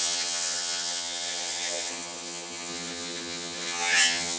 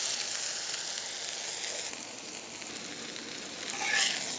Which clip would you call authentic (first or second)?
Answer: second